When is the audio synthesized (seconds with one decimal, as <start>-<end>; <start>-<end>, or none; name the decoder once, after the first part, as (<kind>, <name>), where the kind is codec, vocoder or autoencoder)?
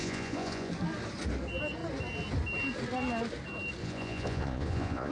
0.0-0.7 (vocoder, Vocos); 3.8-5.1